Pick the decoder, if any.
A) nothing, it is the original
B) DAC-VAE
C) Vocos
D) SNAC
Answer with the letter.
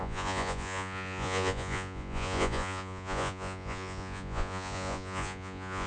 C